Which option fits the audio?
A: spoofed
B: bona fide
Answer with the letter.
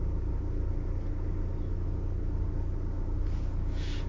B